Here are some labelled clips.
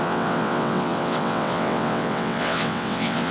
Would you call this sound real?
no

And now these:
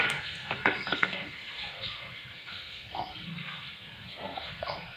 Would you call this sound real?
no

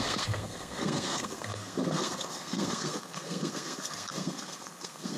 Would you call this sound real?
no